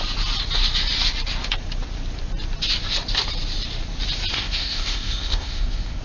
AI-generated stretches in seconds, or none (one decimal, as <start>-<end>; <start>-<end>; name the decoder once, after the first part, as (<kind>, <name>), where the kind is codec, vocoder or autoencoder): 4.3-6.0 (codec, ZipCodec)